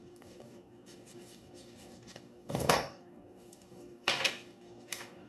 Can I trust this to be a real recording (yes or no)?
no